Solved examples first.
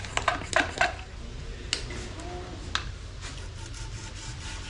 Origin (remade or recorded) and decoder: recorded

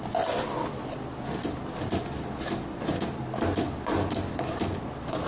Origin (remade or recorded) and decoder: recorded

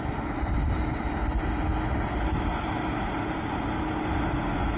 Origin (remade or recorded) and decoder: recorded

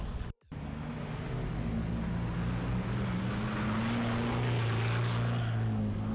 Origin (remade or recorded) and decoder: recorded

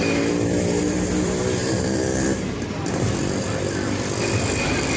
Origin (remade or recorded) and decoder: remade, vocoder, BigVGAN v2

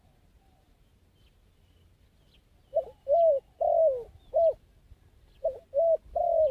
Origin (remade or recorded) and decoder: recorded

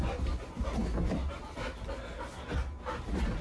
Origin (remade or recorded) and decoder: recorded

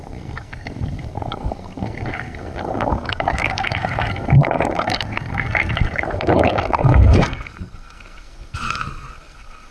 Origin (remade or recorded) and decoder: remade, codec, SNAC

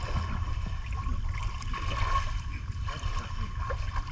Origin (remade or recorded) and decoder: recorded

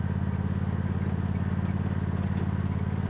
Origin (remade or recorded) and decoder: recorded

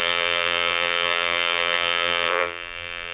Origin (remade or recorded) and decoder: remade, vocoder, BigVGAN v2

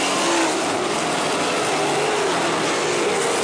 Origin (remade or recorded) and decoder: recorded